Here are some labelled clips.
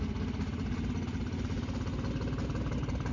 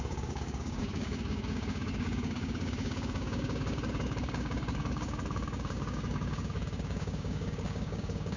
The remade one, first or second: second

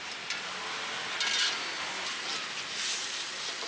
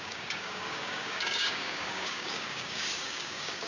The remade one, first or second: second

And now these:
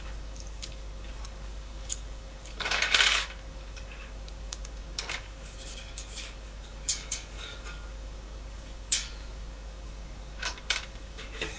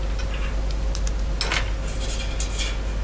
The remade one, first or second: first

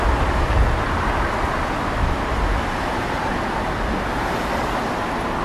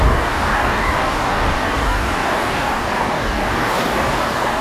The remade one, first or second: second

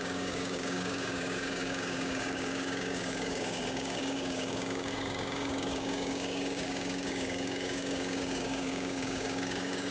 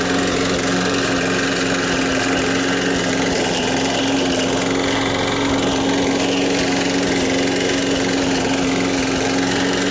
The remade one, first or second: first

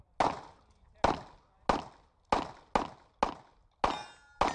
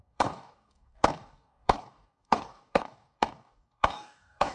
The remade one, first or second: second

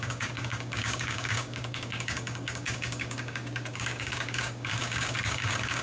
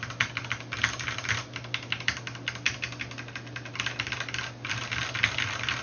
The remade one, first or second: first